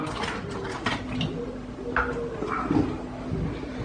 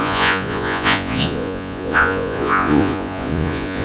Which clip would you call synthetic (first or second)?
second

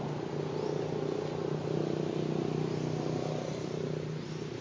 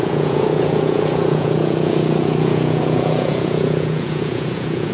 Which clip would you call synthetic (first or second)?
second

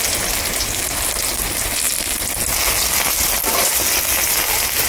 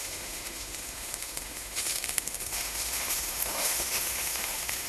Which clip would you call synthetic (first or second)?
second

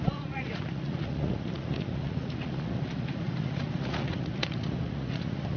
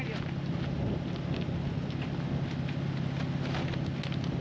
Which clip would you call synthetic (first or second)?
first